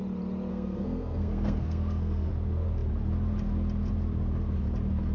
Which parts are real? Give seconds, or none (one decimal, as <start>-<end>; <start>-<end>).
0.0-0.5; 2.3-5.1